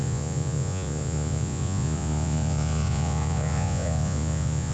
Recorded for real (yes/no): no